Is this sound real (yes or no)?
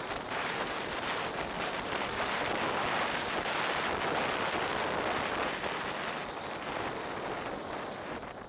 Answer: yes